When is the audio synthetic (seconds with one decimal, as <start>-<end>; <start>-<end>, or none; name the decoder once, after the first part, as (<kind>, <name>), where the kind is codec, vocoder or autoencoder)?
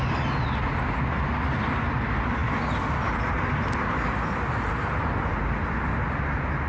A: none